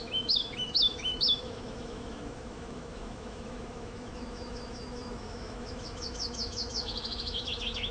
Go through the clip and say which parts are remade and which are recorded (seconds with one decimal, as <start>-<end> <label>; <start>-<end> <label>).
0.0-7.9 remade